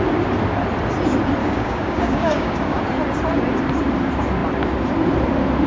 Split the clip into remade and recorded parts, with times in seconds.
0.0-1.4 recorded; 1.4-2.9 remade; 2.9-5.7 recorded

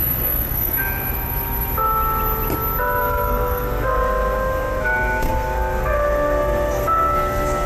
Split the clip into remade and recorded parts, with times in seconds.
0.0-0.8 remade; 0.8-3.0 recorded; 3.0-7.7 remade

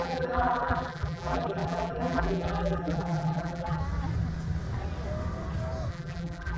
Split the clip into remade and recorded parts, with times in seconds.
0.0-3.8 remade; 3.8-5.9 recorded; 5.9-6.6 remade

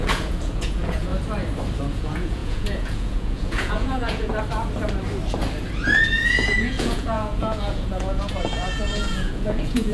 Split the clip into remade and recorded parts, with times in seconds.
0.0-1.1 remade; 1.1-1.8 recorded; 1.8-4.3 remade; 4.3-6.0 recorded; 6.0-9.9 remade